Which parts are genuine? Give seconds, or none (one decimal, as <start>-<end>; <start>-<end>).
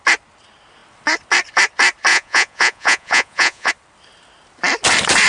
0.0-2.1; 3.7-5.3